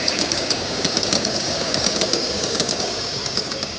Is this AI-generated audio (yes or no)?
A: yes